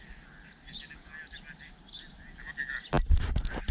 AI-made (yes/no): no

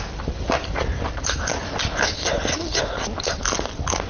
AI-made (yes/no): no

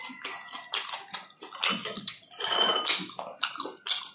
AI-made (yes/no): no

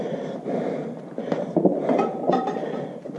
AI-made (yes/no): yes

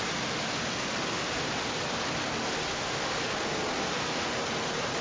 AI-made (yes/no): no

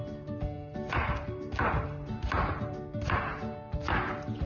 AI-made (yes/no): yes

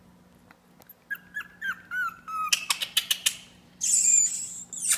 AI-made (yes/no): no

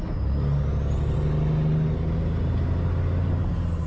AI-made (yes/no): no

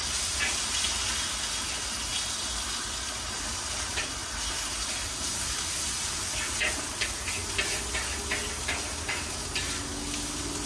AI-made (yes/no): no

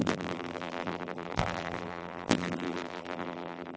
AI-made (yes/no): yes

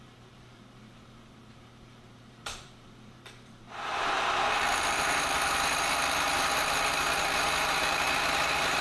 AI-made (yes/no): yes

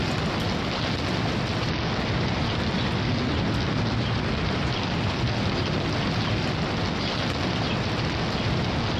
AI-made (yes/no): no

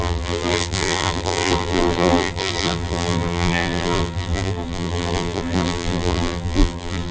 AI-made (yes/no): yes